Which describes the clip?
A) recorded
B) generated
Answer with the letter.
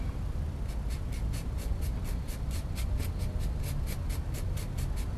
A